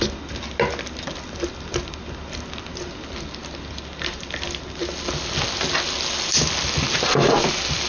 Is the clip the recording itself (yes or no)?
yes